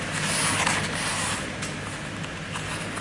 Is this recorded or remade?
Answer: recorded